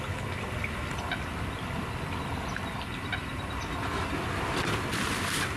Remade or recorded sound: recorded